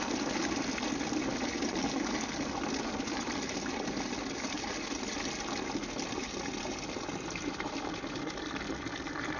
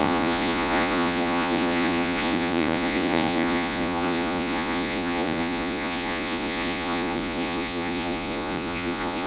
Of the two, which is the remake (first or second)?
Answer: second